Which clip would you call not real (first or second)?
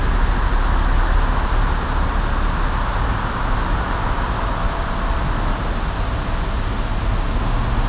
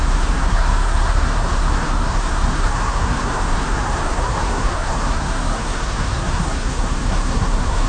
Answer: second